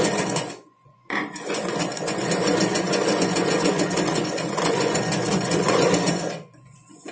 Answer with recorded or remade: remade